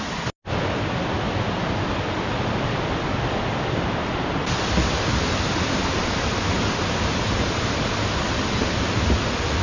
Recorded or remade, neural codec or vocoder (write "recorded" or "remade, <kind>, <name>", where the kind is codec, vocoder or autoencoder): recorded